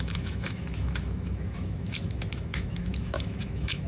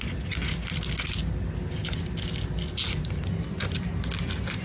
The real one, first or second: second